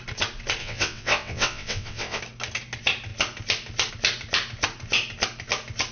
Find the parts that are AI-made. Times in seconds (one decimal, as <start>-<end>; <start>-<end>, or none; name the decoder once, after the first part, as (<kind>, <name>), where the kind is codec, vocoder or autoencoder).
0.6-2.2 (vocoder, WaveNeXt)